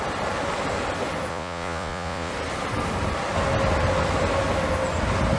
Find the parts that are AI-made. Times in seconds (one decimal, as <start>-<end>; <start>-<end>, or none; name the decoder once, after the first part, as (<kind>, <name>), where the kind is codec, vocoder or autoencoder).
1.3-2.3 (vocoder, Vocos)